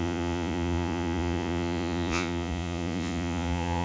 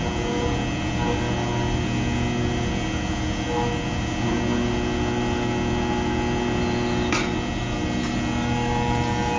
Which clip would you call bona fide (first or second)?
second